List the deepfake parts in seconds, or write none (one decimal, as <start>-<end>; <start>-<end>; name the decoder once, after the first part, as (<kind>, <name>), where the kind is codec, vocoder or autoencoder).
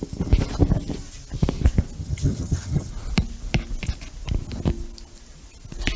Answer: 2.0-2.9 (vocoder, HiFi-GAN)